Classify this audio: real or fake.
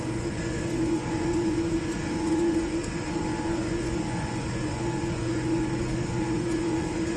fake